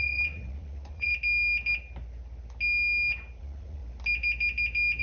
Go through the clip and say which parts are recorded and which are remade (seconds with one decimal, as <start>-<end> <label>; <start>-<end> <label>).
0.0-1.1 remade; 1.1-3.4 recorded; 3.4-3.8 remade; 3.8-5.0 recorded